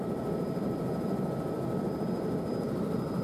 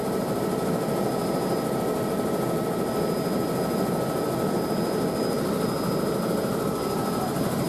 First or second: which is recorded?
second